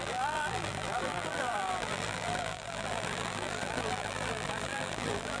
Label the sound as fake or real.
fake